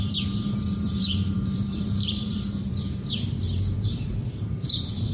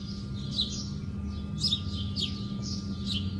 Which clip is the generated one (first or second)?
first